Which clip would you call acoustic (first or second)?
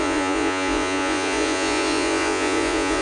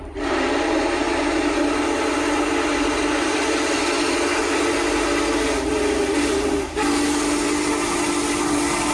second